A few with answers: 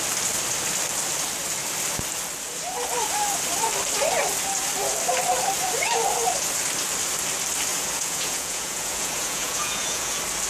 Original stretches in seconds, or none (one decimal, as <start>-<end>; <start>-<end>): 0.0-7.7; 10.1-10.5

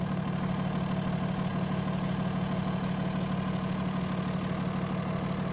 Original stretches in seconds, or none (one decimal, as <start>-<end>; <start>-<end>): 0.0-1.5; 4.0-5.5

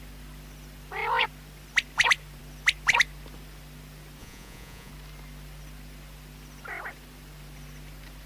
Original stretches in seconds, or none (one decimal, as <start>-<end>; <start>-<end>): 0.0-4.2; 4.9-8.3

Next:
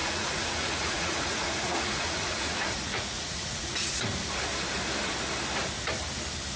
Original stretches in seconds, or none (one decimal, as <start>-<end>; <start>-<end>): 4.0-6.6

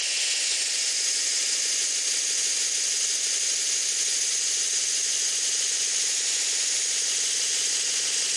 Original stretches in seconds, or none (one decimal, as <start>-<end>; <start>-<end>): none